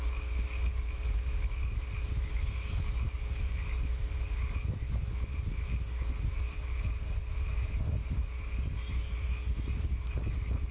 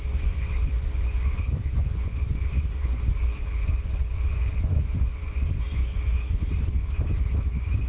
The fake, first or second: second